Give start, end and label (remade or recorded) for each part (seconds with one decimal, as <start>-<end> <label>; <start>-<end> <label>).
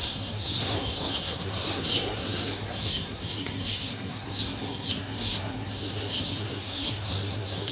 0.0-7.7 remade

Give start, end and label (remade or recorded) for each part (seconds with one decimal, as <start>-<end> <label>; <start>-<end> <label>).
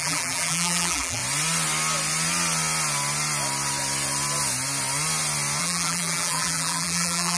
0.0-1.2 remade; 1.2-5.6 recorded; 5.6-7.4 remade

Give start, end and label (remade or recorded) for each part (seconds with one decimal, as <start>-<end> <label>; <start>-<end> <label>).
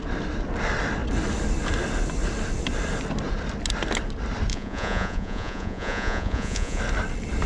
0.0-4.5 recorded; 4.5-6.8 remade; 6.8-7.5 recorded